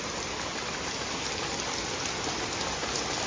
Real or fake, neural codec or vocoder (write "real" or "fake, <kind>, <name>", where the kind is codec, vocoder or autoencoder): real